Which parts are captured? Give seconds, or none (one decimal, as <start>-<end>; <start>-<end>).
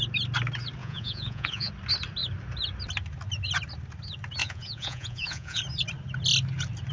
0.0-0.8; 1.7-4.4; 5.6-6.9